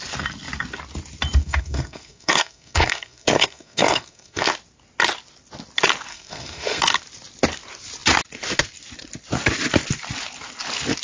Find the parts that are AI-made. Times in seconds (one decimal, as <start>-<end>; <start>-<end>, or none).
1.4-4.5; 6.1-6.8